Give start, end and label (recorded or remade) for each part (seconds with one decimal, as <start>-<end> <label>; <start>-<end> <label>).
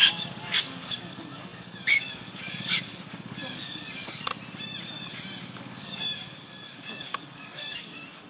0.0-4.3 remade; 4.3-5.4 recorded; 5.4-8.3 remade